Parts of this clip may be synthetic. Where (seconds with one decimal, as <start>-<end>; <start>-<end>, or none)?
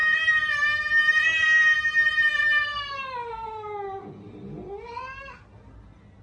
none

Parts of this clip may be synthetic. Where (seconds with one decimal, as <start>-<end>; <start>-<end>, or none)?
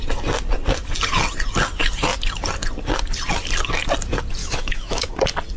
4.4-5.1